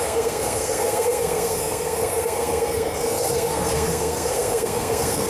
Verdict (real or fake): fake